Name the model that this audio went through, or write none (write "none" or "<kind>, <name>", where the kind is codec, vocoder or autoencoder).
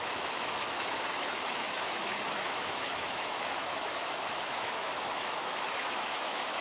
autoencoder, DAC-VAE